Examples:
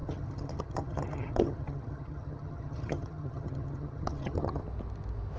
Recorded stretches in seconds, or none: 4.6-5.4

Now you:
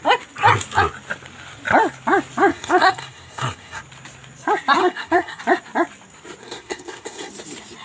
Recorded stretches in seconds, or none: 0.0-2.5; 3.8-4.8; 5.4-6.4; 7.3-7.8